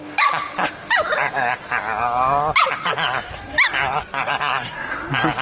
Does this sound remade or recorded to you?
recorded